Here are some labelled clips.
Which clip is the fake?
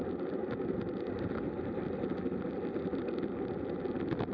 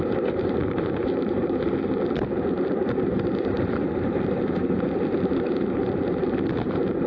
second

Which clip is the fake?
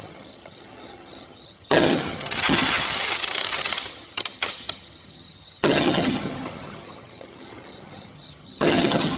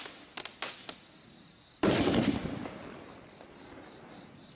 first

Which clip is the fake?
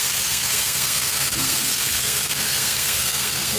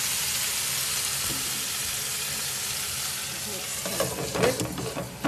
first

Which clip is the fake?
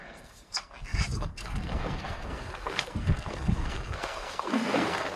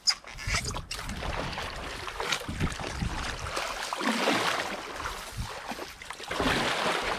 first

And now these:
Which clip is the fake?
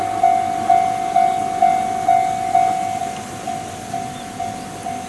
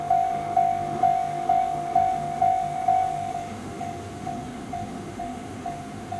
second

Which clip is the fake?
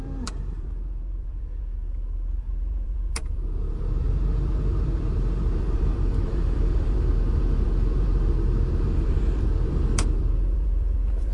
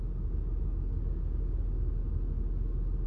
first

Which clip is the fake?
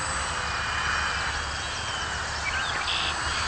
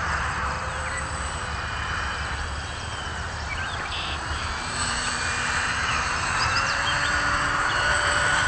second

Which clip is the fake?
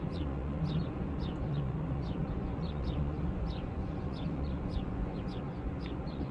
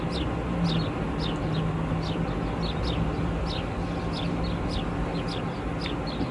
first